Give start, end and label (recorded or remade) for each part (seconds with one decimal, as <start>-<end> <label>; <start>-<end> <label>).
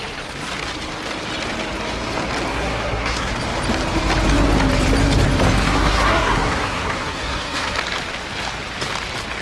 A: 0.0-2.5 recorded; 2.5-3.3 remade; 3.3-5.6 recorded; 5.6-7.8 remade; 7.8-9.4 recorded